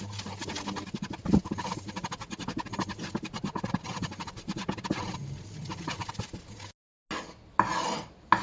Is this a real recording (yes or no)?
yes